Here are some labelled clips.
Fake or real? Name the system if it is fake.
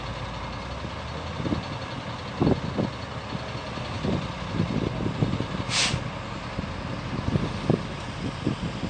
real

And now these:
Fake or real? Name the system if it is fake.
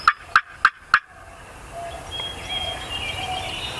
real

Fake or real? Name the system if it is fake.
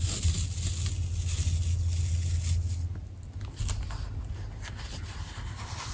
real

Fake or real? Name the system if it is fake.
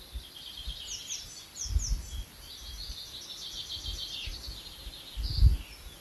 real